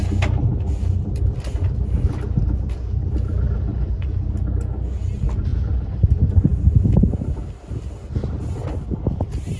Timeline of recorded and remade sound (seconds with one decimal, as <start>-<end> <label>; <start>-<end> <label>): 0.0-3.7 recorded; 3.7-4.3 remade; 4.3-5.5 recorded; 5.5-6.1 remade; 6.1-9.6 recorded